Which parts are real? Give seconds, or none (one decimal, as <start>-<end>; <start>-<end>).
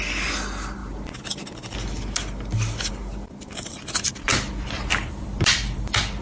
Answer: 0.0-4.3